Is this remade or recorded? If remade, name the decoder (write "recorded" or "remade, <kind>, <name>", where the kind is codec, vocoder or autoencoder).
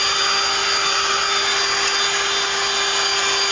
recorded